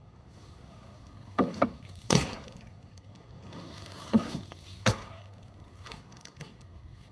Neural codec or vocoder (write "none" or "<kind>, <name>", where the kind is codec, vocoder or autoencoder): codec, SNAC